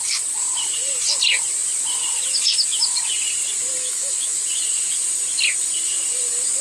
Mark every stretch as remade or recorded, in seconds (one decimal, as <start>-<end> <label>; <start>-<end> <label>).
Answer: 0.0-3.8 recorded; 3.8-4.4 remade; 4.4-6.6 recorded